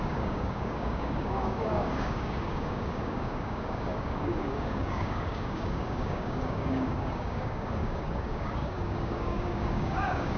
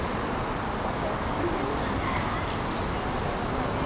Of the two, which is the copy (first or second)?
first